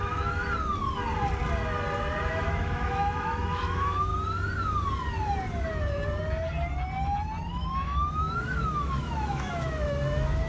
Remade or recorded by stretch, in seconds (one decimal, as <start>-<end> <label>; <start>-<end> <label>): 0.0-0.4 remade; 0.4-2.2 recorded; 2.2-4.1 remade; 4.1-7.5 recorded; 7.5-10.5 remade